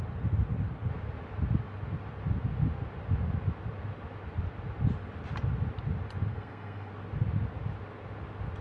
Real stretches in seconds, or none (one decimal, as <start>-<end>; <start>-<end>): 0.0-6.3; 6.9-8.6